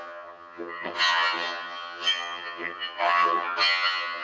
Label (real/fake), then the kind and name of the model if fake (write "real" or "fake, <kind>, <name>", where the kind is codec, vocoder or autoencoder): fake, vocoder, HiFi-GAN